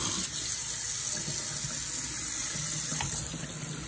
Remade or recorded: recorded